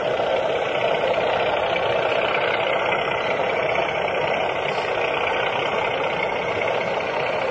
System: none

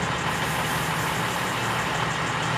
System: none